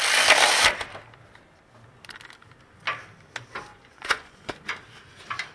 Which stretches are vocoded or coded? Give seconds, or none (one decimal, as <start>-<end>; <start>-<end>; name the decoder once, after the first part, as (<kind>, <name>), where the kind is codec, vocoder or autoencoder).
3.7-4.7 (vocoder, Vocos)